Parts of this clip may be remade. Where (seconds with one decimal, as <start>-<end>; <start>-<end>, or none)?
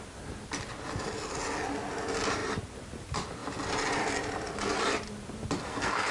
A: 5.6-6.1